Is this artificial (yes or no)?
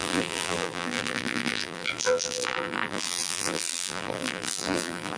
yes